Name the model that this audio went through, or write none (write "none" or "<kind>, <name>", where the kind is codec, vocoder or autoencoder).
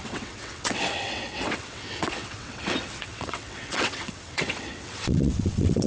vocoder, WaveNeXt